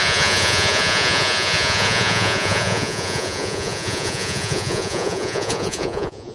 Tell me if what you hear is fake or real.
fake